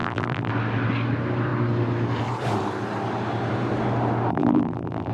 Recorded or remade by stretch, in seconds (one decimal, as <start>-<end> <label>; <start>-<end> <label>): 0.0-0.5 remade; 0.5-4.3 recorded; 4.3-5.1 remade